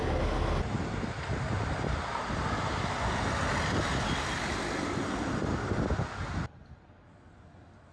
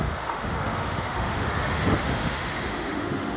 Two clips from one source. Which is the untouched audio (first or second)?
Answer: first